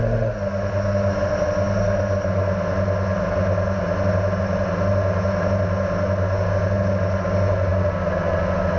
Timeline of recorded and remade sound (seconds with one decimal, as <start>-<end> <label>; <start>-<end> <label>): 0.0-8.8 recorded